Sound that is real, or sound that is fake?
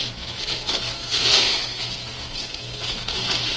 fake